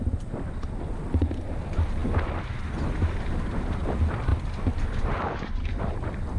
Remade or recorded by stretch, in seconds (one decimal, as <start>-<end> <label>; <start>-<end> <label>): 0.0-6.4 recorded